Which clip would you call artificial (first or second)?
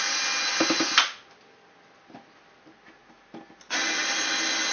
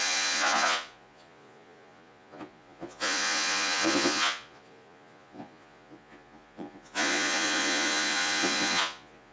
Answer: second